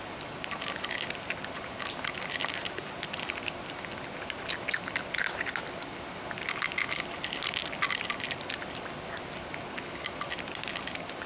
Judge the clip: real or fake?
real